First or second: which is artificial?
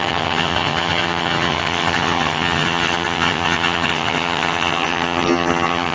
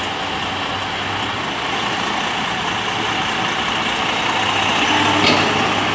first